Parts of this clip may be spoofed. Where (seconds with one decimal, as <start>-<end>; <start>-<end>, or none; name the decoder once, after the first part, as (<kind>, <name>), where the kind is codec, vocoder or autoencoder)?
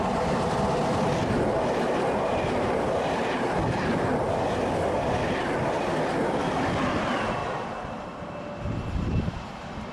none